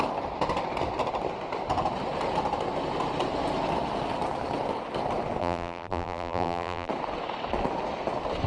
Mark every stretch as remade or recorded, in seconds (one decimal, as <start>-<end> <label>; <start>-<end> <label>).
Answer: 0.0-5.4 recorded; 5.4-6.9 remade; 6.9-8.5 recorded